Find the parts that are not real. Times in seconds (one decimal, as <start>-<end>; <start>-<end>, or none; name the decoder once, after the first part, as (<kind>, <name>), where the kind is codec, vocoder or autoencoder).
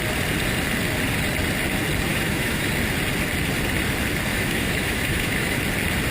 2.1-2.7 (autoencoder, DAC-VAE); 4.3-5.6